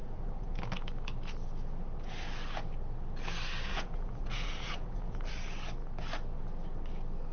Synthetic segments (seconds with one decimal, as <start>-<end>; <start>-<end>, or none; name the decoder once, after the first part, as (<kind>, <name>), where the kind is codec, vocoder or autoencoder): 0.0-0.6 (vocoder, Vocos); 3.7-5.3